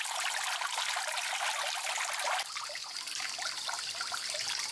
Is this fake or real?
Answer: real